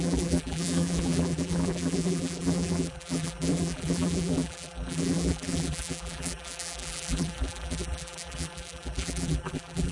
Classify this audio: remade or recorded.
remade